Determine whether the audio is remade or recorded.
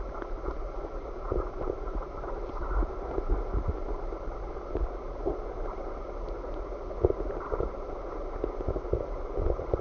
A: recorded